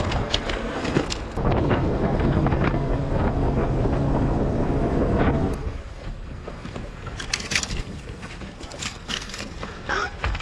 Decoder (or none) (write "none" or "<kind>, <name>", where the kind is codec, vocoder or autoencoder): codec, SNAC